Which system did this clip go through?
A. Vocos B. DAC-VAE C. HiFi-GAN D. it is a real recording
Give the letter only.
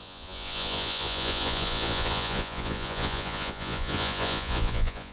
A